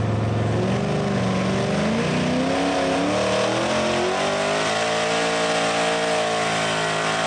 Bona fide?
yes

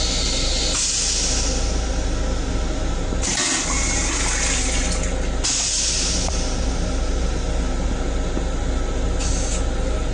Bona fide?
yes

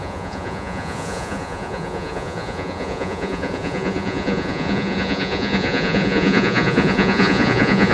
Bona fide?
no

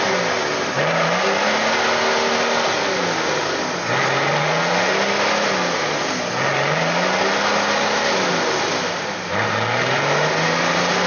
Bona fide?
yes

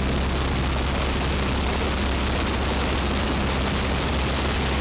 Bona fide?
yes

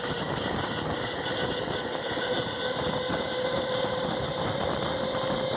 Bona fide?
yes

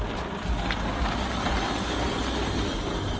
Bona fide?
yes